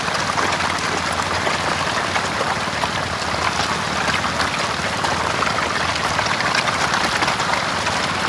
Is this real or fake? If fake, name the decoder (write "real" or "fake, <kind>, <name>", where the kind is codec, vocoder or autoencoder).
real